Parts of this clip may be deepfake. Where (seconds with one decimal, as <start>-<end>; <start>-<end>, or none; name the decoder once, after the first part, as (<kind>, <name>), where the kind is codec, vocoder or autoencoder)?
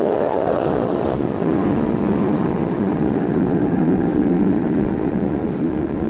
0.0-6.1 (vocoder, Vocos)